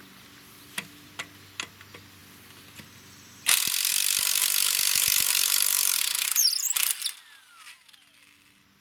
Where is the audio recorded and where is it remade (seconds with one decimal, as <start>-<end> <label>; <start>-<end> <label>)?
0.0-8.8 recorded